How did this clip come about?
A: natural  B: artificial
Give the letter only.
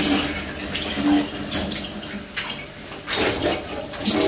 A